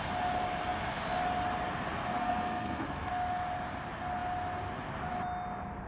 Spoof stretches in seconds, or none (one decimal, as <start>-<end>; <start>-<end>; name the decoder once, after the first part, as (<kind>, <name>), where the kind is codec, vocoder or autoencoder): 2.2-3.1 (codec, SNAC)